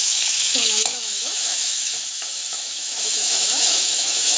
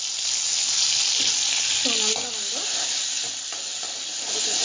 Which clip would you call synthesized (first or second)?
first